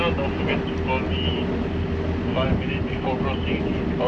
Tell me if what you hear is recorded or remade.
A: recorded